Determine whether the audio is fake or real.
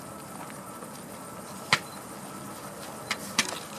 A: real